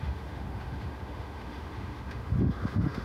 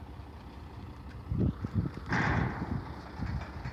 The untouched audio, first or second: second